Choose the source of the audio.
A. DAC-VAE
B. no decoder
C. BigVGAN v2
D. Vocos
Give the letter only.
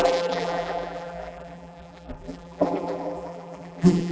C